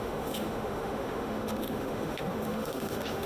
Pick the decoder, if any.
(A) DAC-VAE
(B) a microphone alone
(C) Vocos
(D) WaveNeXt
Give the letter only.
A